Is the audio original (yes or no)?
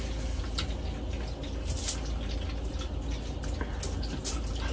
yes